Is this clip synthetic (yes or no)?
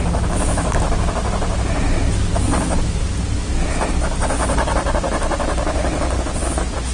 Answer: no